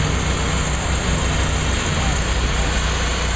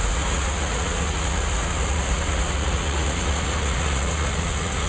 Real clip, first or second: first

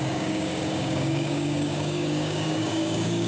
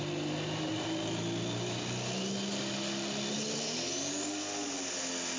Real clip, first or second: second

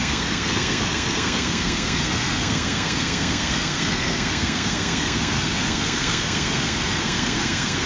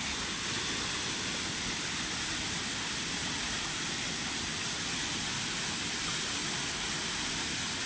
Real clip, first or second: second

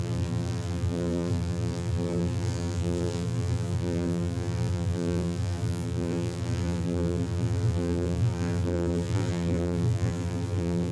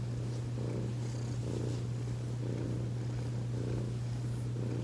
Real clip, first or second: second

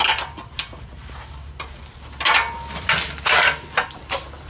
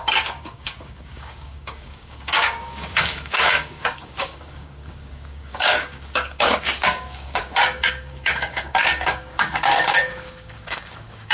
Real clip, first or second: first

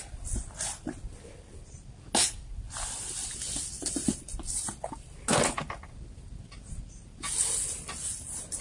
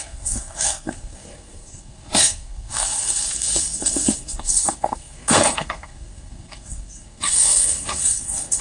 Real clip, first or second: first